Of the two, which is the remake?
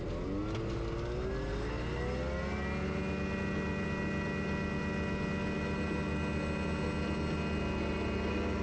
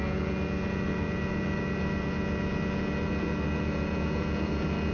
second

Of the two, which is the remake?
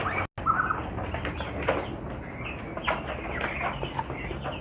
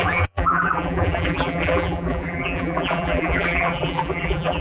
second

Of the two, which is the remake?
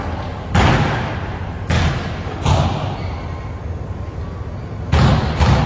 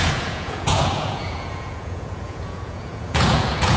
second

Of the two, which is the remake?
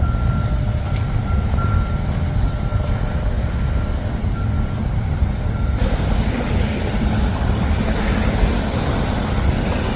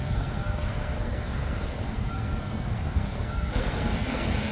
second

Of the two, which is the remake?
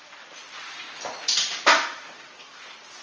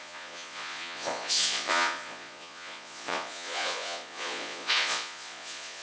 second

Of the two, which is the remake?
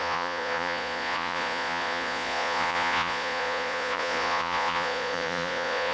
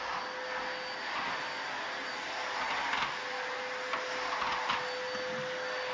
first